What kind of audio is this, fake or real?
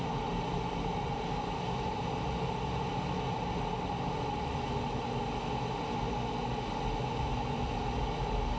real